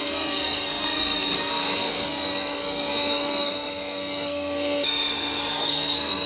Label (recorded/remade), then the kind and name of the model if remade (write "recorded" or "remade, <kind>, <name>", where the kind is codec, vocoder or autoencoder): remade, codec, SNAC